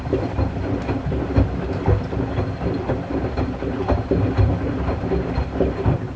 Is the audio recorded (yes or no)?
yes